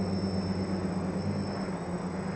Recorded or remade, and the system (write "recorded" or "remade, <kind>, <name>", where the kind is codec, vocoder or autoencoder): recorded